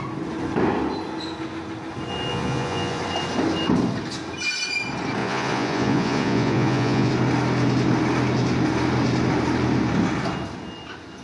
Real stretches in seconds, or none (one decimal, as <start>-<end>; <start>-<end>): 0.0-2.3; 3.0-5.2; 7.1-11.2